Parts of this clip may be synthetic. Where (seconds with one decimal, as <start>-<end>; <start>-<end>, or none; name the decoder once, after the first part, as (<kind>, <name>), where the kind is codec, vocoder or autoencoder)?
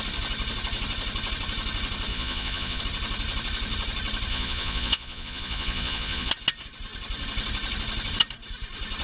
2.1-2.8 (vocoder, Vocos); 4.3-6.3